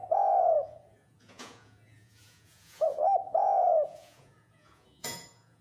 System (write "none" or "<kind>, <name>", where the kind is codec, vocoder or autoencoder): vocoder, Vocos